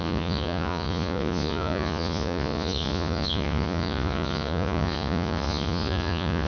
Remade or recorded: remade